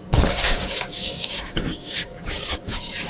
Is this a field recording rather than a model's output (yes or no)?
no